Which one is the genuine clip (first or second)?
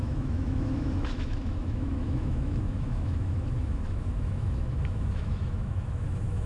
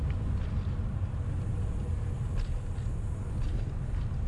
second